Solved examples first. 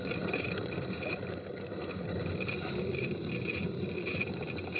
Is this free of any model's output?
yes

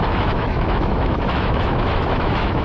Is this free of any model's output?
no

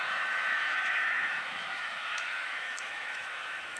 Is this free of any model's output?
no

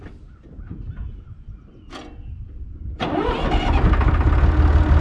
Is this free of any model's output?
yes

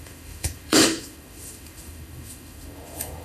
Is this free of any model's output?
no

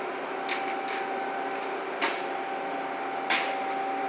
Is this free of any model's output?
yes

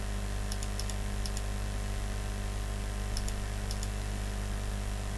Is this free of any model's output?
yes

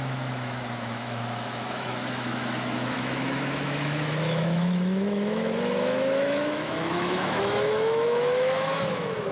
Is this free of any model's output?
no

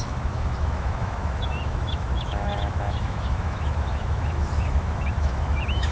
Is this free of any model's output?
no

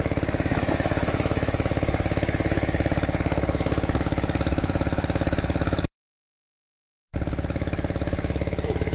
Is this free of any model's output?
no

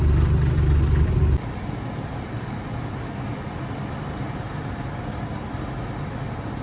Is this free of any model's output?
yes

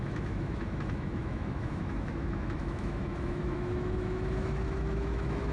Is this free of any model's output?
no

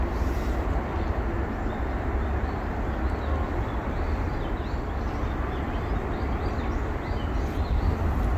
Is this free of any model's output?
yes